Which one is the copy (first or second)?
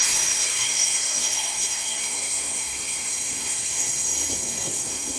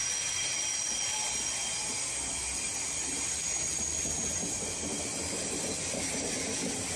first